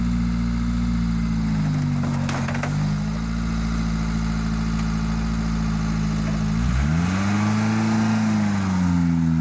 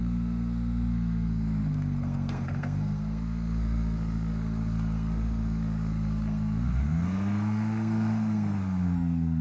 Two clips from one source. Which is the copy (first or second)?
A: second